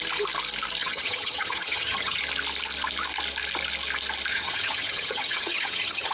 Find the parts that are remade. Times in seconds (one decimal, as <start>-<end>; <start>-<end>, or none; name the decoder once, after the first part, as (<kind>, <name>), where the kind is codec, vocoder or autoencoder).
0.8-2.2 (vocoder, HiFi-GAN); 4.3-6.1